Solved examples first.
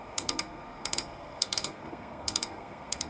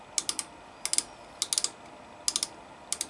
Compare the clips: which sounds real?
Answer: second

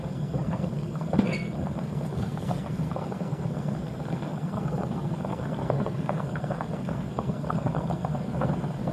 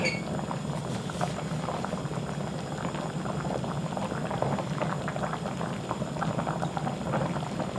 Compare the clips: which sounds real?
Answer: second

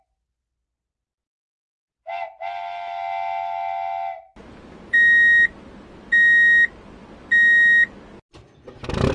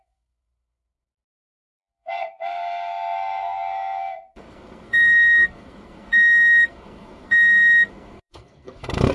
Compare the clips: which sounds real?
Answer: first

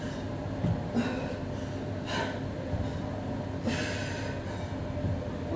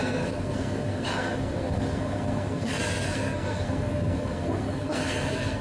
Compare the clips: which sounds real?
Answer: first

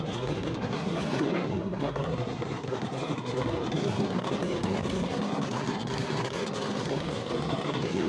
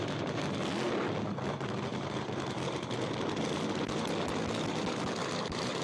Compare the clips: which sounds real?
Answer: second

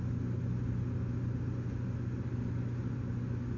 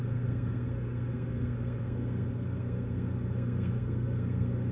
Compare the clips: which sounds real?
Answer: first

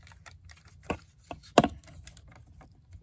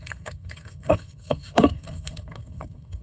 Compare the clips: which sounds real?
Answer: first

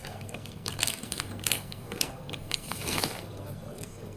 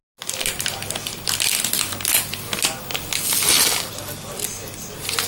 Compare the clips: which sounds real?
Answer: second